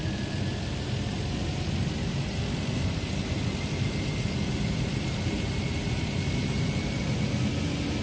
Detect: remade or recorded recorded